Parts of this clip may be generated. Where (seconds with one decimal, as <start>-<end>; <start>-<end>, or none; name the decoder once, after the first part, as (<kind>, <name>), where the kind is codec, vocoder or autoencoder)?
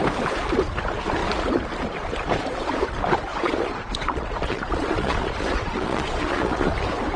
3.3-6.7 (vocoder, Vocos)